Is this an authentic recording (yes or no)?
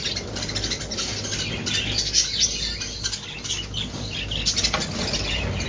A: yes